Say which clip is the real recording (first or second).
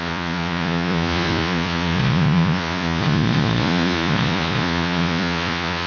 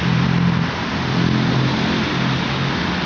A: second